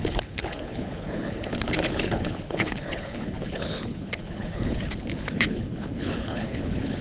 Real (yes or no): no